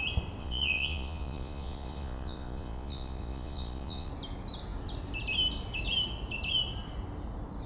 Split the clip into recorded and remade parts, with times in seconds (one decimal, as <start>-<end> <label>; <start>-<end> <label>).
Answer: 0.0-0.4 recorded; 0.4-4.1 remade; 4.1-7.7 recorded